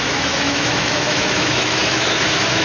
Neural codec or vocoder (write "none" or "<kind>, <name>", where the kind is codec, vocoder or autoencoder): autoencoder, DAC-VAE